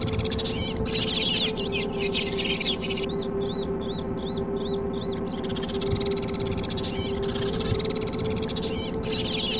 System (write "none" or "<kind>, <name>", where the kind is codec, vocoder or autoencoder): none